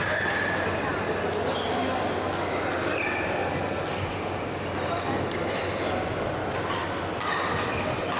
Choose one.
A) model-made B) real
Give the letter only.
B